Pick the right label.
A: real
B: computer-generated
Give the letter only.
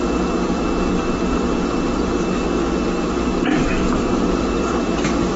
A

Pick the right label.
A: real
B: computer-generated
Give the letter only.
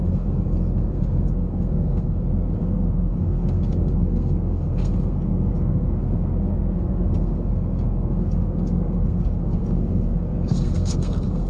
B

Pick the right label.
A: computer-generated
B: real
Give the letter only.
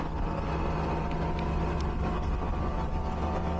B